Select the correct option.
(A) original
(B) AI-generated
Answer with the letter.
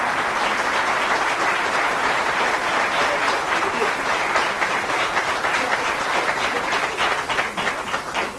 A